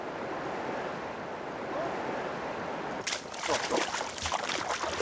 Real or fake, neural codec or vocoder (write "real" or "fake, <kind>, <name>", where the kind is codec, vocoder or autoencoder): real